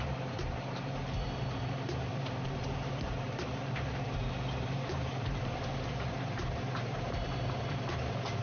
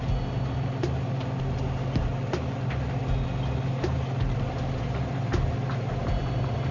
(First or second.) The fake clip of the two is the first